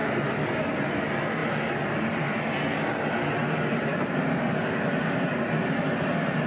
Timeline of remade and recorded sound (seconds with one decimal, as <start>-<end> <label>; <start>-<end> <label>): 0.0-6.5 recorded